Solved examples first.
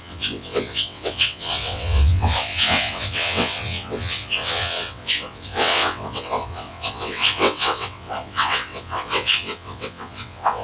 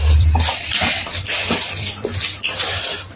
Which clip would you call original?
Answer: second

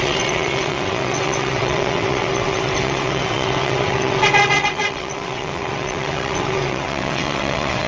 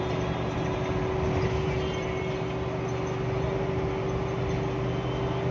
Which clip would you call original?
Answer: second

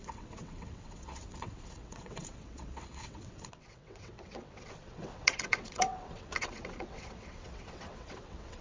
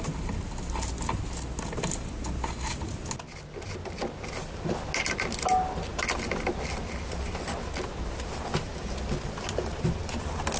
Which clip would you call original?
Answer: second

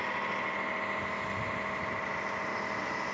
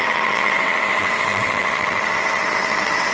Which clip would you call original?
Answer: first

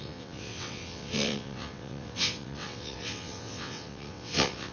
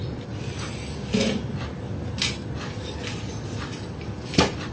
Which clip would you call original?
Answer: second